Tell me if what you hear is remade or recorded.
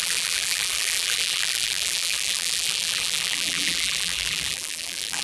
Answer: remade